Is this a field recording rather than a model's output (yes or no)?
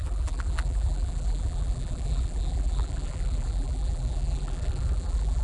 no